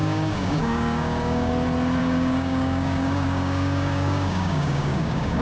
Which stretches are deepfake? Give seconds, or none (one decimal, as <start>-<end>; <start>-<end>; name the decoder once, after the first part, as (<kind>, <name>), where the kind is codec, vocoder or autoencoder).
0.0-1.5 (codec, DAC); 2.0-5.4

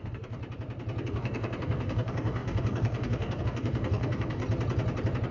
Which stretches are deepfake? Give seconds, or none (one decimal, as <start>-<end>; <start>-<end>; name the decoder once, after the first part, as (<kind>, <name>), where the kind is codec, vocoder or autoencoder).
0.0-0.4 (codec, DAC); 1.0-4.4